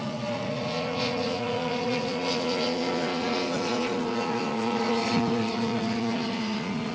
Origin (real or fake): fake